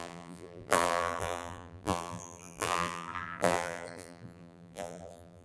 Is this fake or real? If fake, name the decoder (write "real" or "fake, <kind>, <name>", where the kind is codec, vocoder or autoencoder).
fake, vocoder, BigVGAN v2